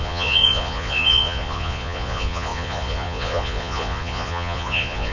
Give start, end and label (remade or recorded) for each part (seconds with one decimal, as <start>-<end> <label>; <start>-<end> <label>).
0.0-5.1 remade